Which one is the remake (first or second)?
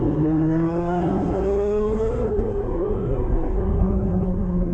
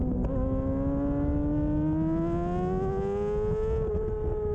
first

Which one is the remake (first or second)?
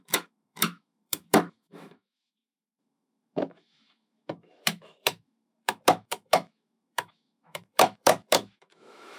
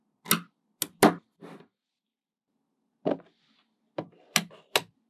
first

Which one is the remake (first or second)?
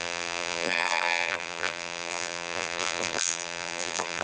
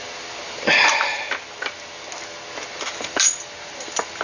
first